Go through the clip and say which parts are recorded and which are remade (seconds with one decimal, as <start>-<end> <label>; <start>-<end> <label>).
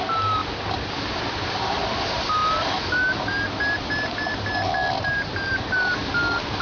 0.0-6.6 recorded